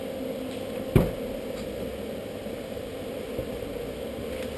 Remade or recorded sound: recorded